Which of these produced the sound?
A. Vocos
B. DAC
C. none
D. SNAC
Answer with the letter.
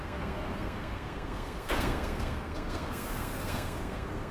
D